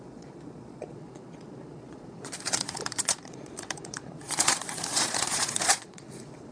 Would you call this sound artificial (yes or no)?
yes